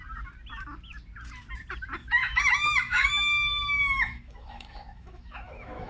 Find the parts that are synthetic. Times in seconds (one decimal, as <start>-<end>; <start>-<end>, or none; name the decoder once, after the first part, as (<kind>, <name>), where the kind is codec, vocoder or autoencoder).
2.0-3.1 (autoencoder, DAC-VAE); 3.5-5.9